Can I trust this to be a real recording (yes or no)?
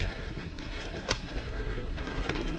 no